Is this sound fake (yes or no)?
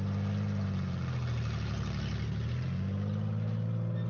no